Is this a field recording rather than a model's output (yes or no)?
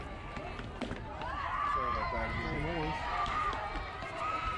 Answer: no